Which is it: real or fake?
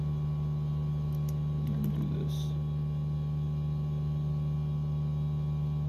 real